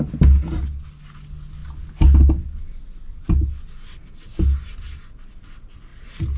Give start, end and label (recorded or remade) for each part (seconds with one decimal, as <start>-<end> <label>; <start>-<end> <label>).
0.0-6.4 recorded